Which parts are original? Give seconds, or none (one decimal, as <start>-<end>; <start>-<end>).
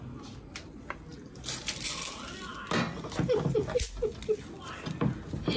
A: 0.0-5.6